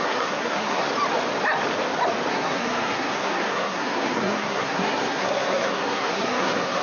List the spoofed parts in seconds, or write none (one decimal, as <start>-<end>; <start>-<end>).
0.0-0.9; 2.3-6.8